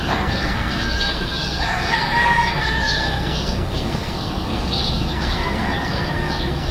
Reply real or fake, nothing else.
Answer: fake